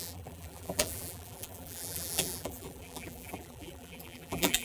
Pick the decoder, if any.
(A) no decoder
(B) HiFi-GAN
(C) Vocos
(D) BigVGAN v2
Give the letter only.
D